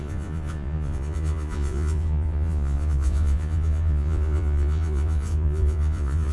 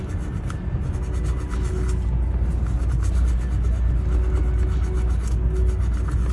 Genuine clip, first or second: second